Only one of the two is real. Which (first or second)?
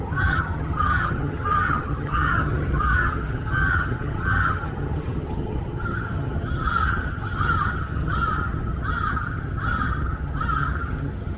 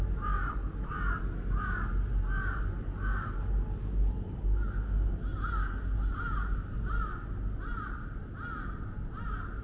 second